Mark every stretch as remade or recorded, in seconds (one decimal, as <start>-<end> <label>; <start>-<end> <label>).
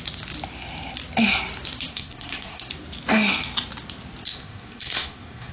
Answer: 0.0-1.9 recorded; 1.9-2.7 remade; 2.7-4.3 recorded; 4.3-5.5 remade